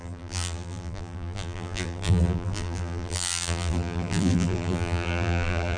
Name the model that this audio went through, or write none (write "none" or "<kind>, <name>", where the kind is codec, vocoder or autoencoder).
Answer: vocoder, BigVGAN v2